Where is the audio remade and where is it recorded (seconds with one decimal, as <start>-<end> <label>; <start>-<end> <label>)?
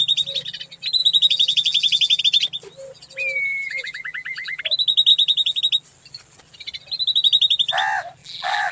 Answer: 0.0-1.0 recorded; 1.0-2.2 remade; 2.2-3.5 recorded; 3.5-4.6 remade; 4.6-5.1 recorded; 5.1-5.6 remade; 5.6-8.2 recorded; 8.2-8.7 remade